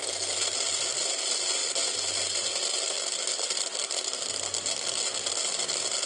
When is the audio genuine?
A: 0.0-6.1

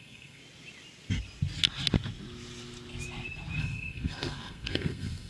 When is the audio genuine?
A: 0.4-3.6

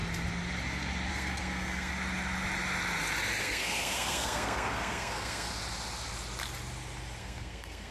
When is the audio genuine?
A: 0.0-1.1; 1.9-3.4; 5.5-7.2

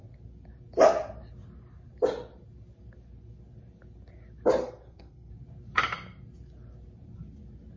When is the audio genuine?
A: 0.0-4.6; 5.3-7.8